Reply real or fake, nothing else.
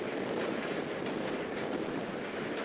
real